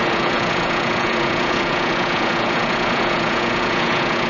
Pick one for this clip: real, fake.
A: fake